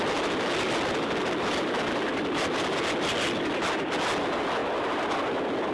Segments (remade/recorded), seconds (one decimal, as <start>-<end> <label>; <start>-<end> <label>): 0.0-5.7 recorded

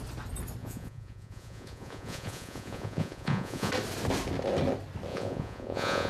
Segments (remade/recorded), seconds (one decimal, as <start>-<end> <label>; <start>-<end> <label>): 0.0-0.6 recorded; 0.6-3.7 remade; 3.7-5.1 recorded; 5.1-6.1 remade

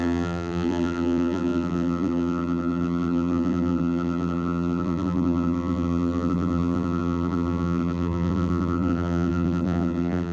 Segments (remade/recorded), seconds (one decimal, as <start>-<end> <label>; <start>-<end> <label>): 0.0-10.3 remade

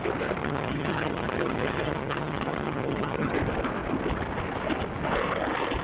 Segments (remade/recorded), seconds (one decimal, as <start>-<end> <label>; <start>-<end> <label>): 0.0-0.4 recorded; 0.4-3.3 remade; 3.3-5.8 recorded

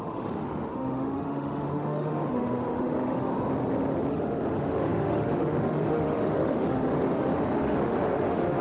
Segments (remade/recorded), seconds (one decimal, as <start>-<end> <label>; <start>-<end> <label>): 0.0-3.3 remade; 3.3-4.1 recorded; 4.1-8.6 remade